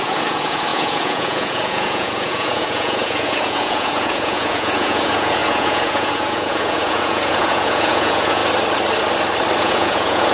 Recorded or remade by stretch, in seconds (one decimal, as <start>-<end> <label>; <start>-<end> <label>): 0.0-8.4 remade; 8.4-9.6 recorded; 9.6-10.3 remade